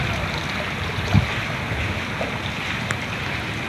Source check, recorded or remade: recorded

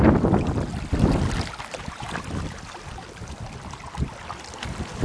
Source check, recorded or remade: remade